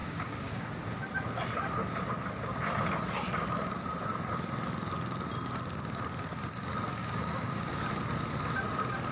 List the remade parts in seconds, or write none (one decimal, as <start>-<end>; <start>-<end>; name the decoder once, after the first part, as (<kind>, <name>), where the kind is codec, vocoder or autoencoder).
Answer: 0.0-0.7 (codec, DAC); 7.0-7.8